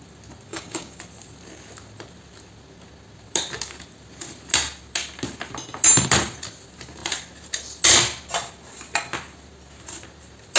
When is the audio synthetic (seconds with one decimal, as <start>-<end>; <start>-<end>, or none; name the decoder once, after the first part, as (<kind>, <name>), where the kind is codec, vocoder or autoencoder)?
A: 0.5-1.0 (codec, DAC)